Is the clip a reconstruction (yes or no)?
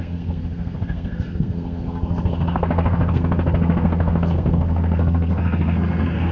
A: yes